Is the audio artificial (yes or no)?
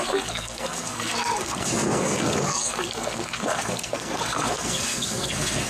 yes